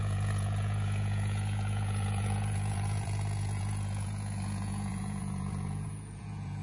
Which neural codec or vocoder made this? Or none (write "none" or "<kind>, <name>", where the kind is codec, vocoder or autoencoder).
vocoder, Vocos